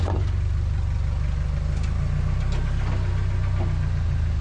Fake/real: real